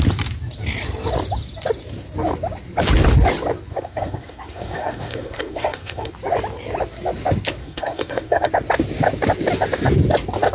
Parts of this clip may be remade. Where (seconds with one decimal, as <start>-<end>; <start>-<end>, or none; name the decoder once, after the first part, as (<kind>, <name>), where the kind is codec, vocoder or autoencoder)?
3.7-6.1 (codec, SNAC); 7.6-8.5